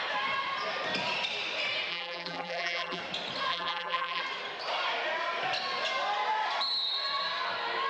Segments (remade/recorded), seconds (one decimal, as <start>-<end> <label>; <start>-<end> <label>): 0.0-1.9 recorded; 1.9-3.0 remade; 3.0-3.5 recorded; 3.5-4.2 remade; 4.2-7.9 recorded